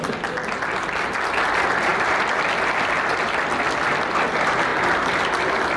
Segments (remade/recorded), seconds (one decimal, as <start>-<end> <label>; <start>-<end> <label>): 0.0-5.8 recorded

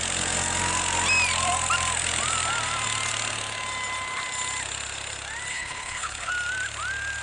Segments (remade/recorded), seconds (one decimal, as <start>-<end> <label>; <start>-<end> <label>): 0.0-5.5 recorded; 5.5-6.3 remade; 6.3-7.2 recorded

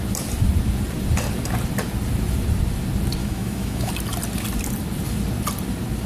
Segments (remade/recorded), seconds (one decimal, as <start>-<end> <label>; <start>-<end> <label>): 0.0-3.2 recorded; 3.2-3.9 remade; 3.9-6.1 recorded

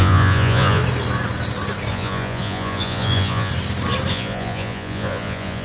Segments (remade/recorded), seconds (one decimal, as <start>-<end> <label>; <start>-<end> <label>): 0.0-0.8 remade; 0.8-1.9 recorded; 1.9-3.5 remade; 3.5-4.1 recorded; 4.1-5.6 remade

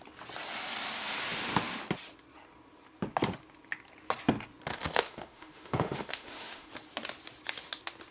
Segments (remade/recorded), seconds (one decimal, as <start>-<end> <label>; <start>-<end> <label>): 0.0-4.7 recorded; 4.7-6.7 remade; 6.7-8.1 recorded

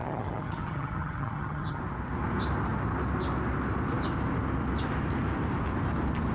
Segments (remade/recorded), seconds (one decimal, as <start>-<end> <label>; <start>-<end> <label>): 0.0-1.8 remade; 1.8-6.3 recorded

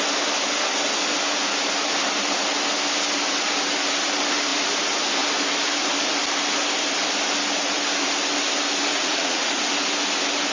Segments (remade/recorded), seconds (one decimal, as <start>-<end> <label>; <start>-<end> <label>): 0.0-8.9 recorded; 8.9-9.6 remade; 9.6-10.5 recorded